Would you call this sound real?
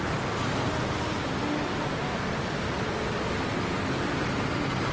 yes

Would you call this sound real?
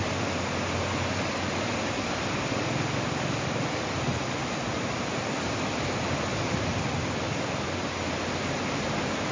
yes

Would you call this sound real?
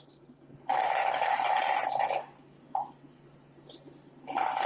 yes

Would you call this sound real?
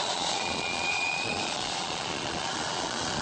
no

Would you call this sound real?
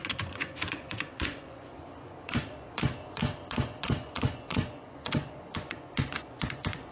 no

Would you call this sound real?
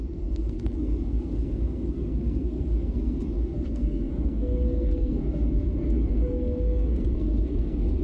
no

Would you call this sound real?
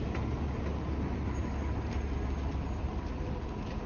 yes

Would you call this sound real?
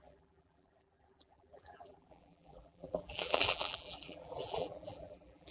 no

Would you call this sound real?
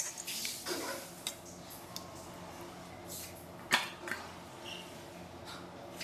yes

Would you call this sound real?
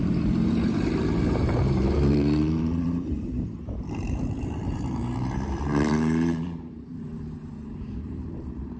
no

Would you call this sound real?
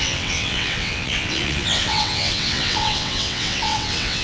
no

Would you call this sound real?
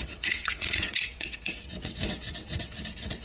no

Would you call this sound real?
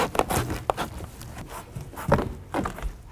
yes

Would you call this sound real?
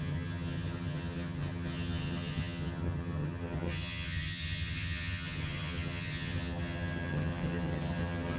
no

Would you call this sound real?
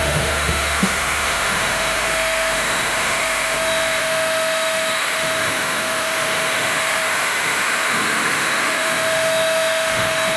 no